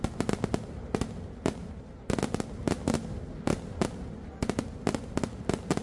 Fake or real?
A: real